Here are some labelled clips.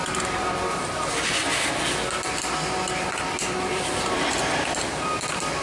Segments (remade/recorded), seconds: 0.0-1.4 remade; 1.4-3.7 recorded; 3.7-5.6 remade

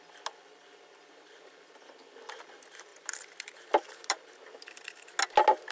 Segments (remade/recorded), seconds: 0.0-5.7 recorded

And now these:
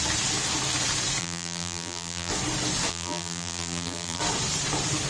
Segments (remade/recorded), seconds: 0.0-1.2 recorded; 1.2-2.3 remade; 2.3-2.9 recorded; 2.9-4.2 remade; 4.2-5.1 recorded

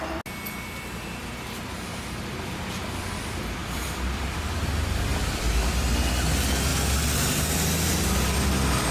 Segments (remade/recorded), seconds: 0.0-3.6 recorded; 3.6-4.5 remade; 4.5-5.1 recorded; 5.1-5.7 remade; 5.7-8.9 recorded

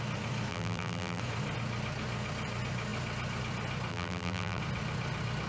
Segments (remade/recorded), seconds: 0.0-0.5 recorded; 0.5-1.2 remade; 1.2-3.9 recorded; 3.9-4.6 remade; 4.6-5.5 recorded

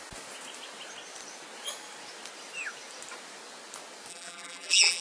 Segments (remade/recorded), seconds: 0.0-4.1 recorded; 4.1-5.0 remade